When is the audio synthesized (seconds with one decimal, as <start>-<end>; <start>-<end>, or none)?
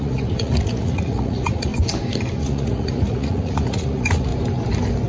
0.0-1.7; 2.4-4.3